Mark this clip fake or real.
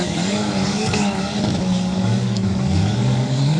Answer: fake